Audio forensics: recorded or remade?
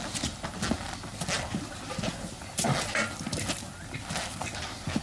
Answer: recorded